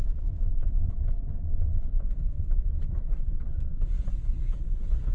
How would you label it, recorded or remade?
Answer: remade